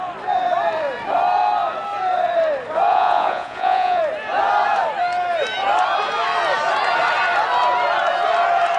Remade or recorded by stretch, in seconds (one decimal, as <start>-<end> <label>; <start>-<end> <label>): 0.0-2.9 recorded; 2.9-4.0 remade; 4.0-8.8 recorded